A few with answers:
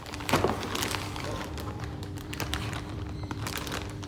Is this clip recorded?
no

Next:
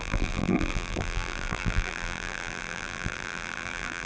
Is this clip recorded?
no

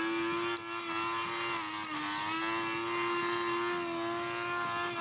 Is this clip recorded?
yes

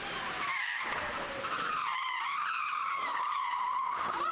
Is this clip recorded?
no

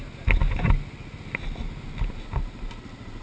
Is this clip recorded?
yes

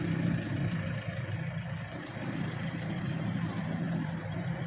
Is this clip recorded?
no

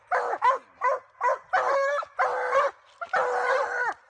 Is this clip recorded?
yes